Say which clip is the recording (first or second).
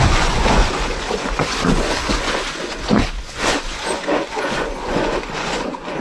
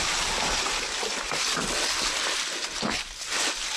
second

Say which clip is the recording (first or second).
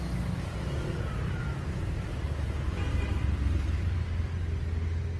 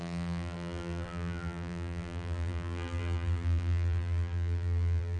first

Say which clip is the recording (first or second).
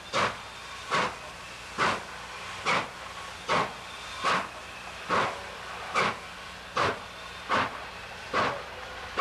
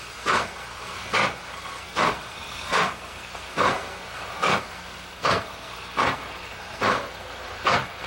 first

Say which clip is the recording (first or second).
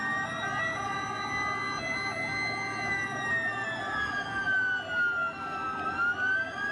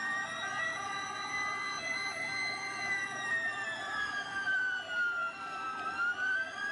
first